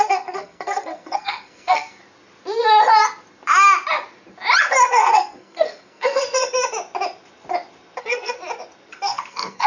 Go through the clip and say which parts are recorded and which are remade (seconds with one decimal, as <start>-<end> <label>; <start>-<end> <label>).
0.0-2.0 remade; 2.0-4.9 recorded; 4.9-6.4 remade; 6.4-8.0 recorded; 8.0-8.4 remade; 8.4-8.9 recorded; 8.9-9.7 remade